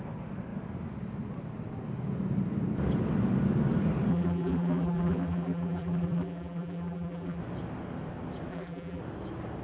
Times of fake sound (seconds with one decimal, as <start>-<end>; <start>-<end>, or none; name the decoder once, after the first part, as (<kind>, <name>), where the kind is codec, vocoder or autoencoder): 4.1-7.4 (vocoder, BigVGAN v2); 8.5-9.0